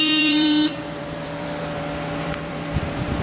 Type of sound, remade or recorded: remade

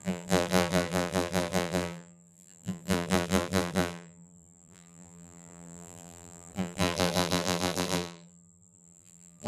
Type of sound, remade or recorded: remade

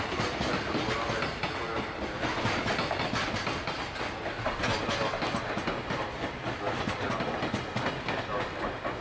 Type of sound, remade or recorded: recorded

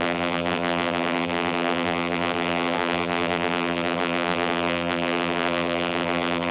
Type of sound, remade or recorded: remade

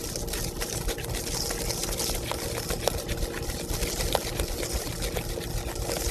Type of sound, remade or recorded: recorded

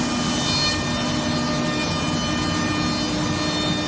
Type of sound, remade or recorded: recorded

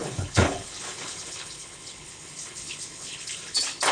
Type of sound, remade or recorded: remade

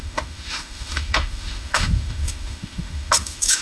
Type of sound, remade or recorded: remade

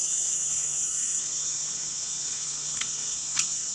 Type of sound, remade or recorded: remade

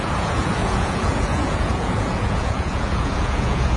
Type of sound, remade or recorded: remade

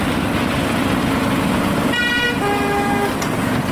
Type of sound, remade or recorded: recorded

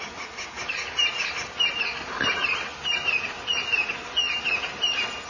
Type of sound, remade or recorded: recorded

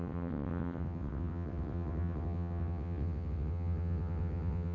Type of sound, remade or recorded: remade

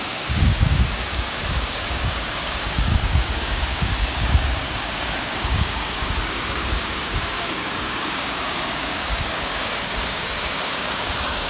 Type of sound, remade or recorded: remade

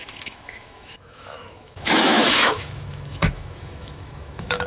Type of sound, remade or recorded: remade